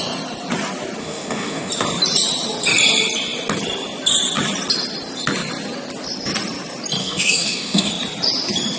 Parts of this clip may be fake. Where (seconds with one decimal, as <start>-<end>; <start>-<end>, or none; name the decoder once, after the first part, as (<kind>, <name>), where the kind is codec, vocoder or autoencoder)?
1.0-1.7 (codec, DAC); 7.0-7.9